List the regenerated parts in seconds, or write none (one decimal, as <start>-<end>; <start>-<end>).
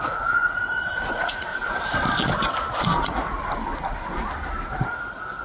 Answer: 0.0-1.5; 3.0-3.4; 4.8-5.4